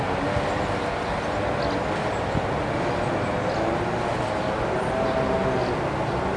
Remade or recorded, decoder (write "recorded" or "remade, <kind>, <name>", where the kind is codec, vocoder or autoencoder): recorded